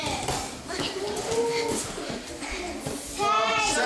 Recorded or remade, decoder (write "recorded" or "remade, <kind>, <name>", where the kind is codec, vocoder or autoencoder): recorded